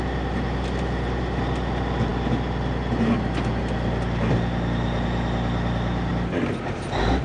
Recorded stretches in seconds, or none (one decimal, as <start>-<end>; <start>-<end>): 0.0-7.2